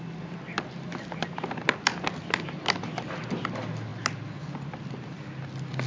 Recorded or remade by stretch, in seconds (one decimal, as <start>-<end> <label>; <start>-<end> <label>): 0.0-5.9 recorded